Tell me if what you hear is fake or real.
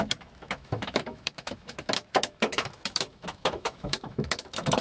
fake